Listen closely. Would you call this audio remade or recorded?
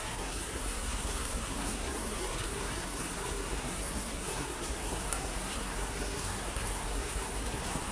remade